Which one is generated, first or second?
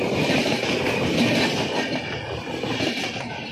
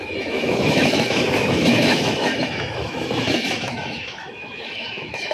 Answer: second